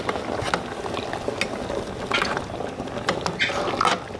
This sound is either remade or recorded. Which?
recorded